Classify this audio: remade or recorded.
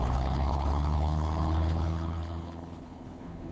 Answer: remade